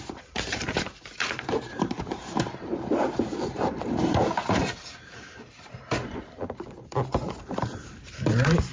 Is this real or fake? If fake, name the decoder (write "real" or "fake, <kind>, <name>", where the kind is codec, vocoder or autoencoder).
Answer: fake, vocoder, BigVGAN v2